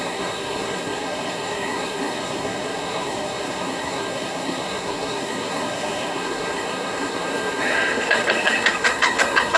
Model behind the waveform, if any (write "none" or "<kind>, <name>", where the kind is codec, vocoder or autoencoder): codec, SNAC